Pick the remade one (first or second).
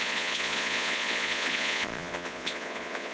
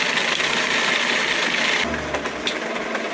first